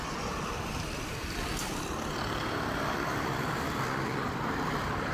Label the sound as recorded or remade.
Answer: remade